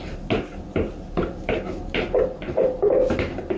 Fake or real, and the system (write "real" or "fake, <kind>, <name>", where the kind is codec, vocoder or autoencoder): real